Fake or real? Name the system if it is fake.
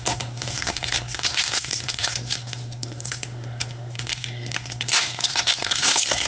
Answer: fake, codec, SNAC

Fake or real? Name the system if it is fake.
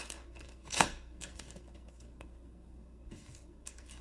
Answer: fake, codec, SNAC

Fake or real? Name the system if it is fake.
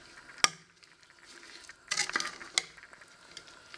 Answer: real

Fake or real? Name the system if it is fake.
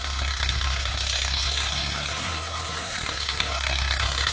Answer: fake, codec, SNAC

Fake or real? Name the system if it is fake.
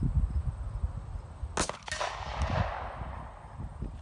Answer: real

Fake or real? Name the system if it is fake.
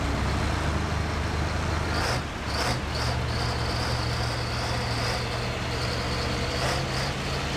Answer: real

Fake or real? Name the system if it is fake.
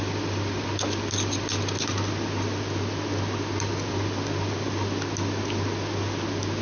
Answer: real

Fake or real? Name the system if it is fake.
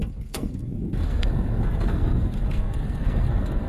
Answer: fake, codec, SNAC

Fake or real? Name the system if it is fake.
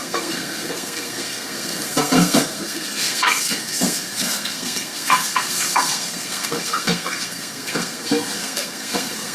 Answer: fake, codec, SNAC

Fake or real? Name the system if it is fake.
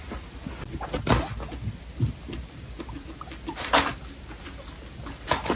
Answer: real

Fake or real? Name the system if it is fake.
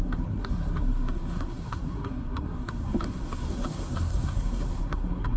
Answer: fake, codec, SNAC